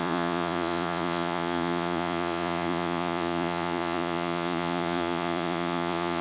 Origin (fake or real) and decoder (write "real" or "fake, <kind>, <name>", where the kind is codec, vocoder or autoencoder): fake, vocoder, Vocos